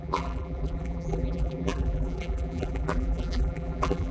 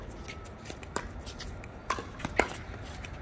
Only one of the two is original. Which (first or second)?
second